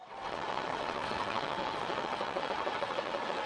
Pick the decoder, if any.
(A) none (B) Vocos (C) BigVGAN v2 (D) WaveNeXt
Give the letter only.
D